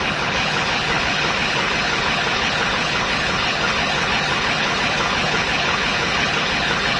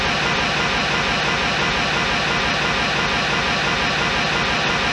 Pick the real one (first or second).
second